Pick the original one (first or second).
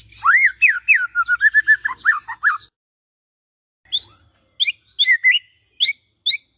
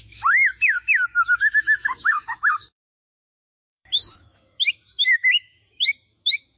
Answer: first